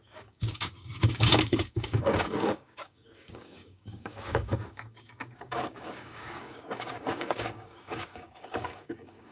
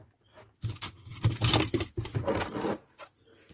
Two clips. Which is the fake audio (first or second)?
first